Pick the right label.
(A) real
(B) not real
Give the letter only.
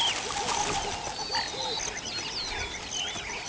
A